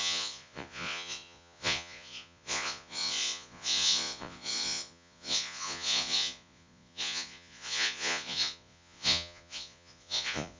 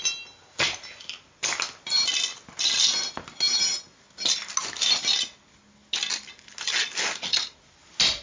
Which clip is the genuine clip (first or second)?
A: second